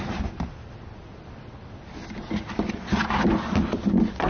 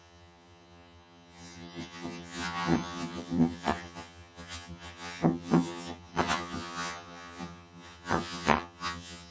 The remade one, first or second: second